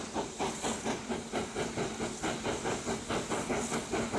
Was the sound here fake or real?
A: real